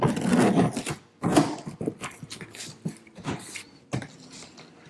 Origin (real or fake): real